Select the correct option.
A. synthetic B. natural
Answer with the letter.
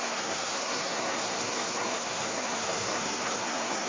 A